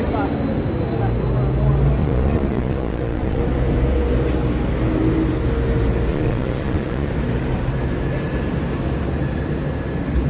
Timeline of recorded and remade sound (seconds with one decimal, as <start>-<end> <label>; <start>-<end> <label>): 0.0-2.0 recorded; 2.0-3.4 remade; 3.4-6.1 recorded; 6.1-7.1 remade; 7.1-10.3 recorded